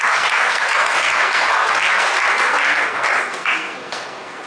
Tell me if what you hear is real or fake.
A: fake